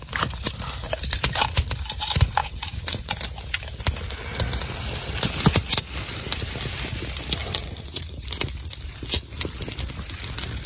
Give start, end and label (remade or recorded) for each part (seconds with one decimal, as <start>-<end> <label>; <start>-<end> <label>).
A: 0.0-2.4 recorded; 2.4-3.2 remade; 3.2-7.4 recorded; 7.4-8.2 remade; 8.2-10.7 recorded